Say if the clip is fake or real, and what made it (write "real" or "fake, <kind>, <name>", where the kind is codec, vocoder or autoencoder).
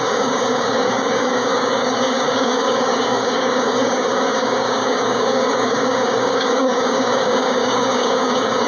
fake, codec, DAC